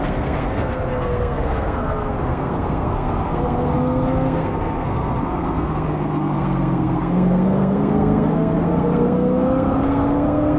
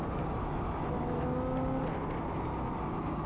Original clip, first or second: second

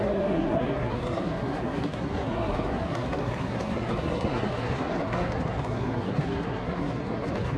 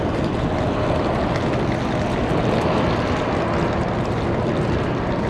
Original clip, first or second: second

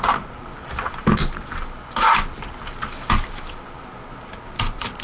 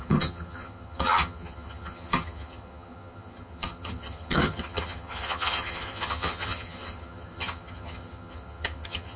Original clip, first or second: first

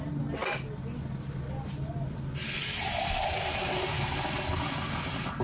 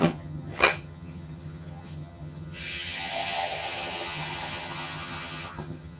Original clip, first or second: first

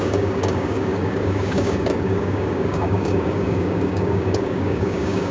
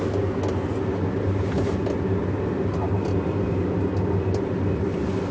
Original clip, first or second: second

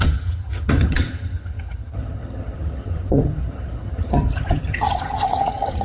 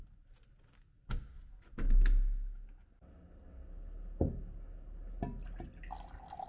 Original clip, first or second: second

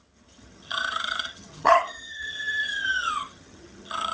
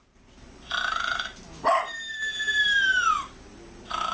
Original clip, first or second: second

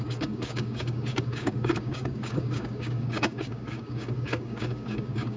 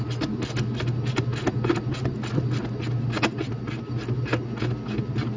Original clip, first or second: second